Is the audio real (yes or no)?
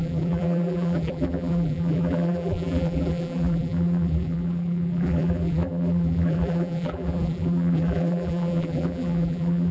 no